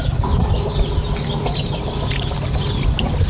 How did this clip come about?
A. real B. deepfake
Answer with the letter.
A